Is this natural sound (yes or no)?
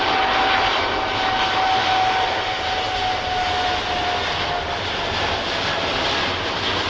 yes